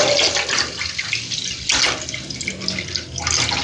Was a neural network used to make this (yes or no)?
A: no